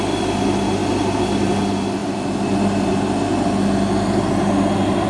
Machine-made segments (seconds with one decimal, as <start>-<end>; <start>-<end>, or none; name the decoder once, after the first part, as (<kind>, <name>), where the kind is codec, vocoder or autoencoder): none